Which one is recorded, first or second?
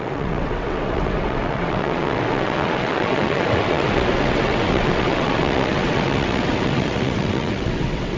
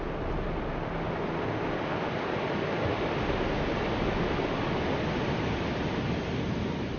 second